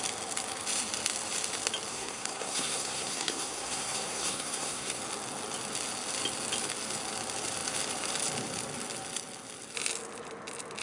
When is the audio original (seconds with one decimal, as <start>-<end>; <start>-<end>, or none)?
0.0-1.9; 5.0-10.8